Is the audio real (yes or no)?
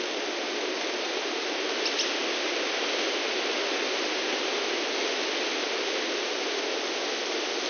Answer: yes